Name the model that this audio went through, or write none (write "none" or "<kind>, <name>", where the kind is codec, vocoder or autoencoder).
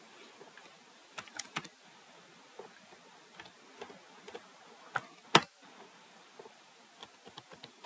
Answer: none